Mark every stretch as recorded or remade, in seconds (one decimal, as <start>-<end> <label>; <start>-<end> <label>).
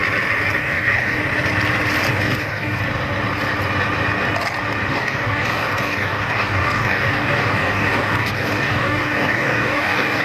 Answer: 0.0-0.6 recorded; 0.6-1.2 remade; 1.2-2.1 recorded; 2.1-2.8 remade; 2.8-4.9 recorded; 4.9-10.2 remade